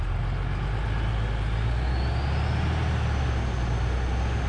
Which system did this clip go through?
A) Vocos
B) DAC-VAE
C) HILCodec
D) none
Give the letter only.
D